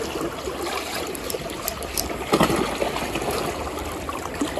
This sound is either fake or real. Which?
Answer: real